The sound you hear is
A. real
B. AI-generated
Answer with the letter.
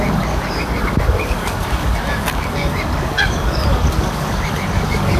B